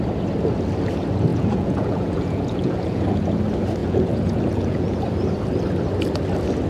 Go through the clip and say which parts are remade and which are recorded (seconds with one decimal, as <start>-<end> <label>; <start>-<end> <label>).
0.0-1.3 recorded; 1.3-3.4 remade; 3.4-3.8 recorded; 3.8-5.0 remade; 5.0-6.7 recorded